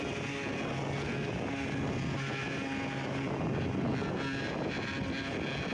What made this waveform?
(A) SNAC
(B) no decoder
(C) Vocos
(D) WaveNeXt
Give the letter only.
B